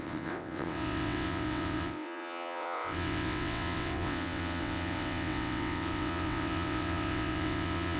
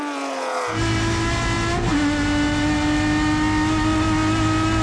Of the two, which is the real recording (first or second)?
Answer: second